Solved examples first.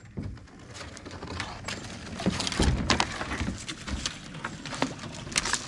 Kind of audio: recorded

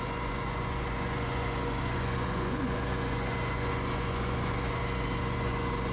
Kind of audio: remade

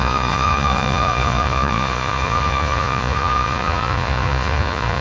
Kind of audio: remade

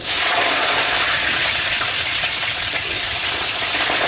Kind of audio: remade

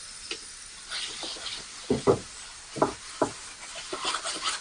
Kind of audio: recorded